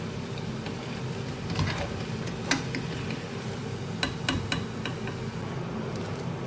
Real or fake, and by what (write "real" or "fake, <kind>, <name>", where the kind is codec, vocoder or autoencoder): real